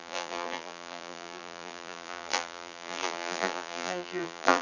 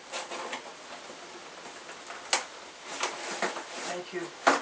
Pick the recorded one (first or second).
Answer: second